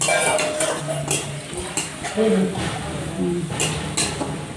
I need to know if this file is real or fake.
real